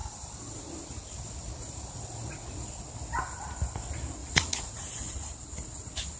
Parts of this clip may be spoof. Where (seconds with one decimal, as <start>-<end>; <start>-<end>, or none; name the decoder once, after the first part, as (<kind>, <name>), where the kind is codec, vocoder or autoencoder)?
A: 4.2-5.3 (vocoder, Vocos)